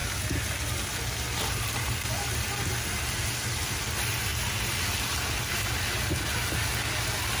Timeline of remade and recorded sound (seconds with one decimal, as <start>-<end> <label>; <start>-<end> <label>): 0.0-7.4 recorded

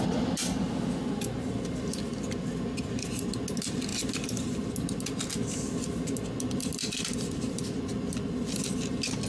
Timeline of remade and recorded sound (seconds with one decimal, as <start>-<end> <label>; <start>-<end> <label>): 0.0-9.3 recorded